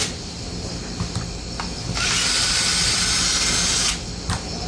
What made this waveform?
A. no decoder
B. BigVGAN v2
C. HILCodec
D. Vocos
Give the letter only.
A